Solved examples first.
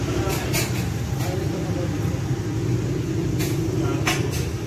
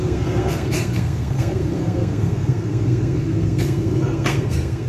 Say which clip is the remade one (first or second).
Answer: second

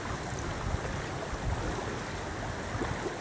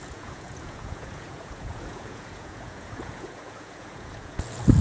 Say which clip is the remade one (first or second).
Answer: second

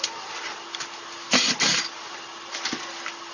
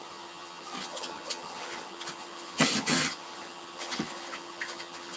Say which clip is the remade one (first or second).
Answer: second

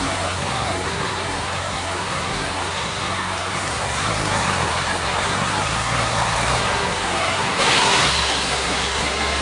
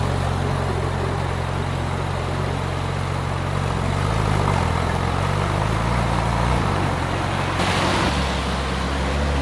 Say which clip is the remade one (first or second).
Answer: first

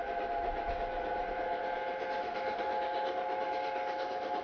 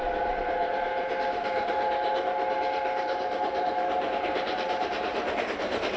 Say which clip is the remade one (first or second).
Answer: second